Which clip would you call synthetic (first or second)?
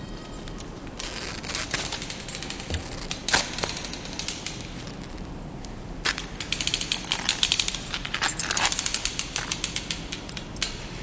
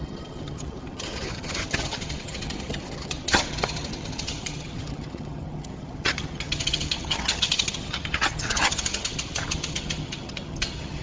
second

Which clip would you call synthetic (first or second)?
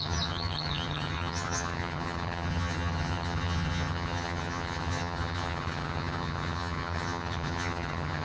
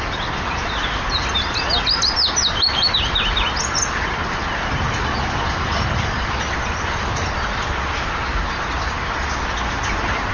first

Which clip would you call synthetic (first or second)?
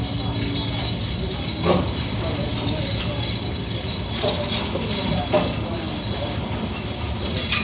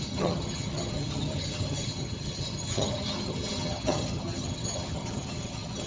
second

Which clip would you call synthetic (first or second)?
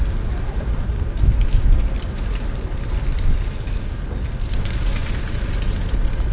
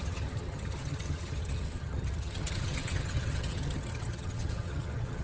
second